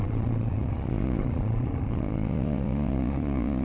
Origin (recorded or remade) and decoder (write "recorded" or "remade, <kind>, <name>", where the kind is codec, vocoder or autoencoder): remade, vocoder, Vocos